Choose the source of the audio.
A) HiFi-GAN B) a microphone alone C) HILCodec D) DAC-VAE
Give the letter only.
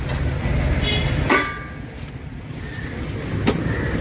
B